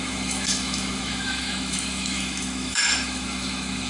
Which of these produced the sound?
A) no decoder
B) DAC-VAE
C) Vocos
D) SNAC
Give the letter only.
B